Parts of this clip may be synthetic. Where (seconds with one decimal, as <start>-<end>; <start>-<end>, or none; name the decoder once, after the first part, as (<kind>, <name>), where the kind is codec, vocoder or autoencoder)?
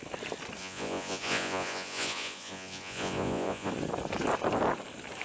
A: 0.6-3.7 (vocoder, Vocos)